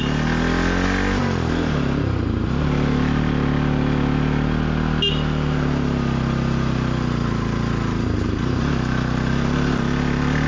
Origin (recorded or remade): recorded